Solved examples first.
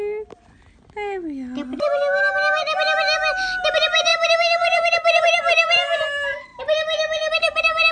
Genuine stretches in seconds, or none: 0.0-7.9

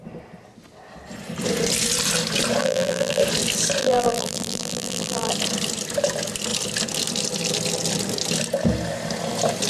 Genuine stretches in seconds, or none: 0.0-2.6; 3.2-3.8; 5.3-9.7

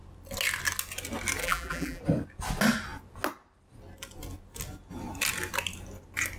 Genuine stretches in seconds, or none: 0.0-1.4; 2.0-6.4

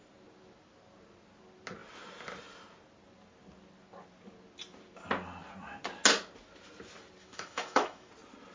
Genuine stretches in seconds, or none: 0.0-7.2; 8.1-8.5